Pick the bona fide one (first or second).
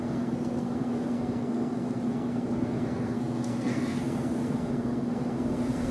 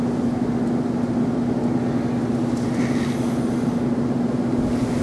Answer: second